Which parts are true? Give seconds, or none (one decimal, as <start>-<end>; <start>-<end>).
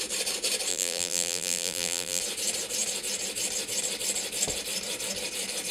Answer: 0.0-0.7; 2.2-5.7